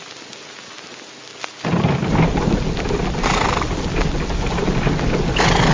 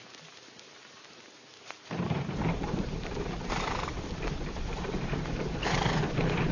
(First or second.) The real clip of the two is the first